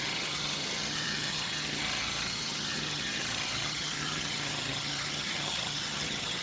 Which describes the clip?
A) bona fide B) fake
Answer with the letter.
B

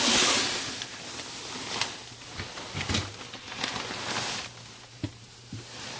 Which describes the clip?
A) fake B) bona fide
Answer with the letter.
B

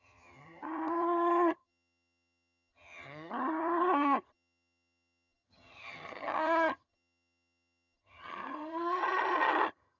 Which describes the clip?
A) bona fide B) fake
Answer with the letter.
B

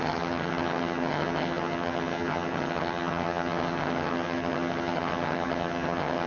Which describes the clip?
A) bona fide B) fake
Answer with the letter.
B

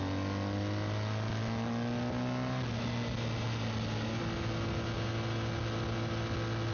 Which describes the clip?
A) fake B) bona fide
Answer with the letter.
B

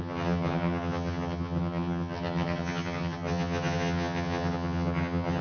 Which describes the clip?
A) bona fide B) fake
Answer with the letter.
B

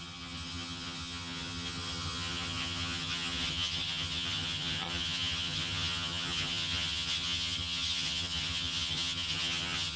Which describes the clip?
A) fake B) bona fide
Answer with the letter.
A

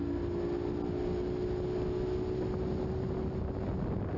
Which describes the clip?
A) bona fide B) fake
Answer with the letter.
A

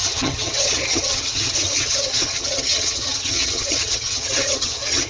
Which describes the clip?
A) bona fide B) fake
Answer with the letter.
B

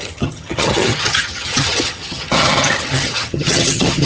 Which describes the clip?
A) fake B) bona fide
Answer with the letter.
A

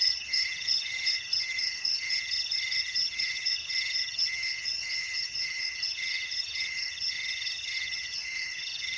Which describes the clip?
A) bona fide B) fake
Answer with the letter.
B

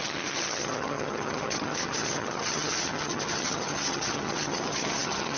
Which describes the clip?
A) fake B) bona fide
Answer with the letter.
A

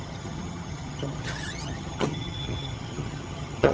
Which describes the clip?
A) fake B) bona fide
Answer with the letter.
A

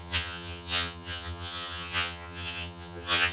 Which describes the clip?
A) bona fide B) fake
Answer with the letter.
B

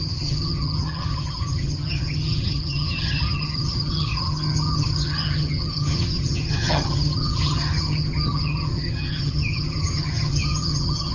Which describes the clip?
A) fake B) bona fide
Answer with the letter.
A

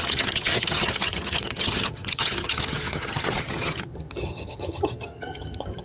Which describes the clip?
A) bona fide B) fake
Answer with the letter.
B